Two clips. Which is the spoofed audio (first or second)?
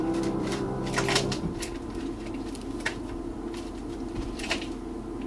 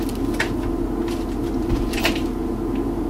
first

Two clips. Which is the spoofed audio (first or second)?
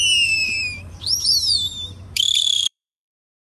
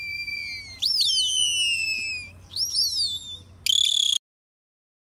first